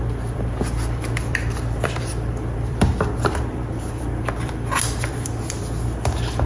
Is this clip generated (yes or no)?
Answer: yes